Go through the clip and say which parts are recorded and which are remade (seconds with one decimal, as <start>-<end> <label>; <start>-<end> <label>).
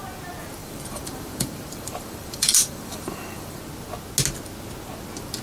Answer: 0.0-0.6 recorded; 0.6-3.6 remade; 3.6-5.4 recorded